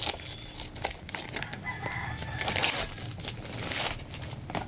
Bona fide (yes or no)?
yes